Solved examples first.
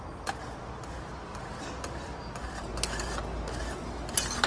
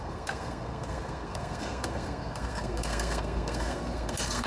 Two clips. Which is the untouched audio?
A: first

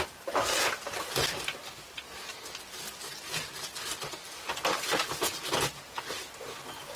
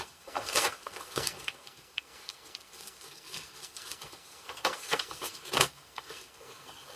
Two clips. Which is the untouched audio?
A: first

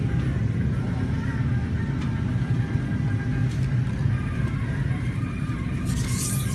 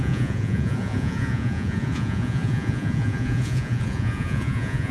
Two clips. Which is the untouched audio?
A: first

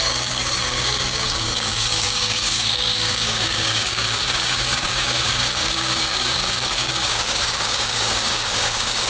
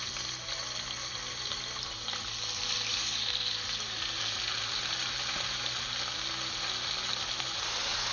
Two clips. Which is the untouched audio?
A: second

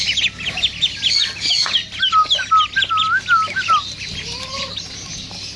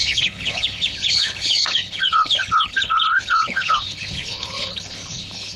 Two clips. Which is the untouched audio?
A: first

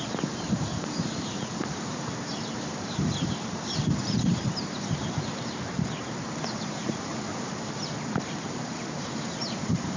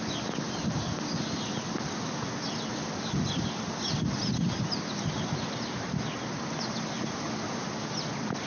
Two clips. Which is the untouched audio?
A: second